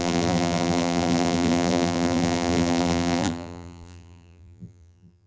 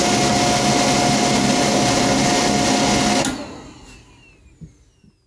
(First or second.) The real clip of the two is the second